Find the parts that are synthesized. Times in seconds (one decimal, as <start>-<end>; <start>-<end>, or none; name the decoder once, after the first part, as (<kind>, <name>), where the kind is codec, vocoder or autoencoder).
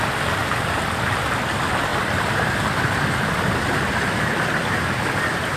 none